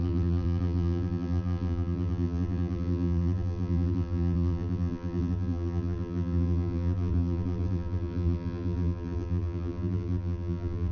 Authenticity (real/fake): fake